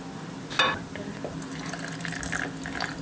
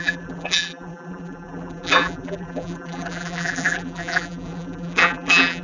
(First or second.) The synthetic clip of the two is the second